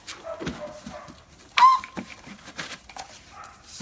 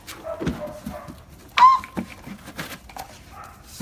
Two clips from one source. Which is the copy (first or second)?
first